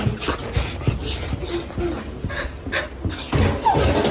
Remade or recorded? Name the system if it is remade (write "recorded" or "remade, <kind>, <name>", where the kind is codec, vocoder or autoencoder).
recorded